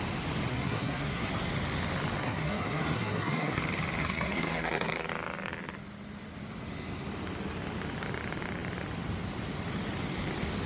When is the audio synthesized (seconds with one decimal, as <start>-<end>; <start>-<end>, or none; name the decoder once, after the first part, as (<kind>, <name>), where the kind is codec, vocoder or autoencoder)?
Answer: 0.5-1.3 (codec, SNAC); 2.2-3.6; 4.0-5.1